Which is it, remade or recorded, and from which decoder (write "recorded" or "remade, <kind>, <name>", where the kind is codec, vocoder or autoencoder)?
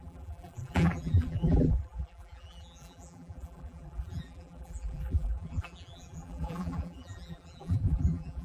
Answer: remade, vocoder, BigVGAN v2